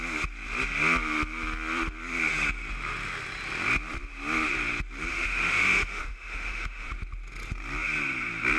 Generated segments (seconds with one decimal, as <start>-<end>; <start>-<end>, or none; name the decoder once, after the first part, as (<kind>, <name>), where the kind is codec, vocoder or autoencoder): 5.1-6.9 (autoencoder, DAC-VAE)